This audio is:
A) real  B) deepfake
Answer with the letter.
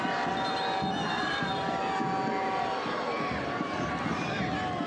A